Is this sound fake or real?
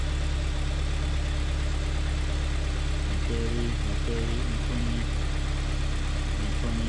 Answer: real